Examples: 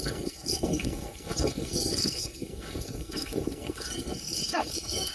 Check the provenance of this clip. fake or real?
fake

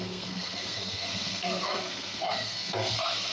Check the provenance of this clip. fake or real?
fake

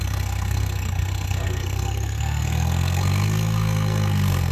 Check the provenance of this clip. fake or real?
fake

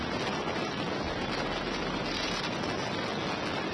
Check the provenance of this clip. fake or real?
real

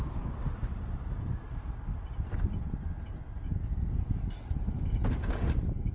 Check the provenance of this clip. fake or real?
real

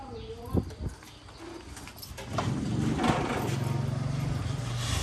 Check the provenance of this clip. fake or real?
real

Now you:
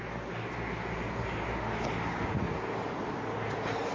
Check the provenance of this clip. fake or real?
real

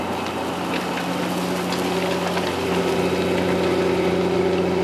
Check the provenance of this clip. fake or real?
real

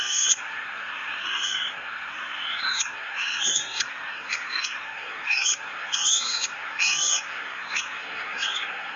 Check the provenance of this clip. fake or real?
fake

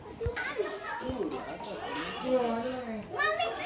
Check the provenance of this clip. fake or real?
real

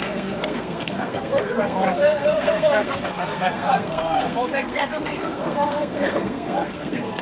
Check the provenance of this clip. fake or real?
fake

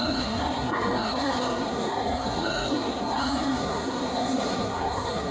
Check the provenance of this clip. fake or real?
fake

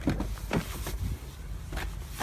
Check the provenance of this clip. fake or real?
real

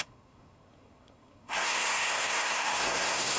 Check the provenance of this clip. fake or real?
fake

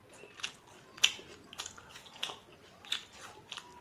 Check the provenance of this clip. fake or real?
real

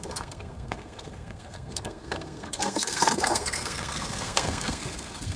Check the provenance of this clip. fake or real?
fake